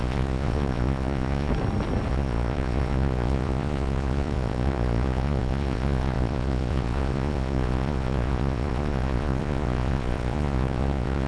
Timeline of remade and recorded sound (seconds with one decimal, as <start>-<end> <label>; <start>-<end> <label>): 0.0-1.5 remade; 1.5-2.1 recorded; 2.1-11.3 remade